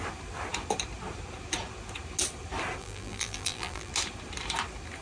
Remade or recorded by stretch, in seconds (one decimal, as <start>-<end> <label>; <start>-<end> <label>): 0.0-2.8 recorded; 2.8-3.9 remade; 3.9-5.0 recorded